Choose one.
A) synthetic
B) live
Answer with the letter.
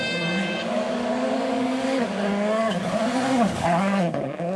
A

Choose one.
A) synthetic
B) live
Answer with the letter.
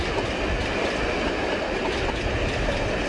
B